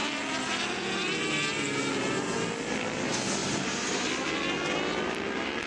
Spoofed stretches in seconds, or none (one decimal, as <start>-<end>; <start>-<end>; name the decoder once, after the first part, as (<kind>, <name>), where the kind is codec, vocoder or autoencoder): 3.4-4.1 (vocoder, BigVGAN v2)